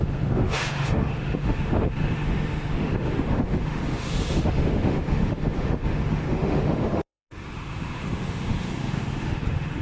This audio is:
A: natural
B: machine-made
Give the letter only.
B